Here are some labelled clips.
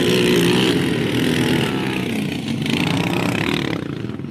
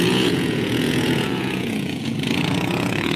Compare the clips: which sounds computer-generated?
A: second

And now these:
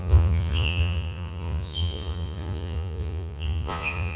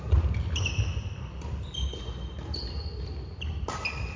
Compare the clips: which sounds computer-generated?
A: first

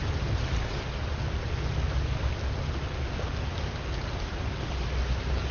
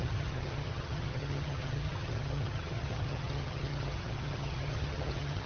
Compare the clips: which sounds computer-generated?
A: second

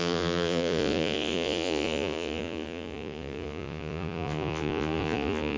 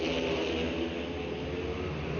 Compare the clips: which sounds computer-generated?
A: first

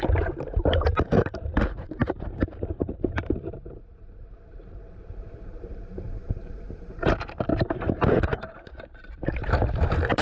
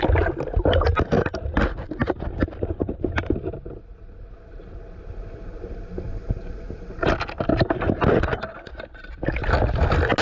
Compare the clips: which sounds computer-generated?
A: first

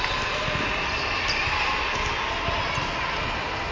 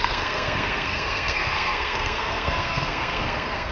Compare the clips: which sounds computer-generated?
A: second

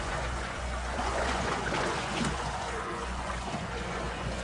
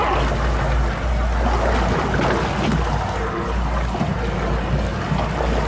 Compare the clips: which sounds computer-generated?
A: first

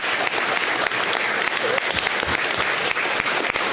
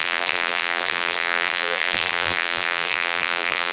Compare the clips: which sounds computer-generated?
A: second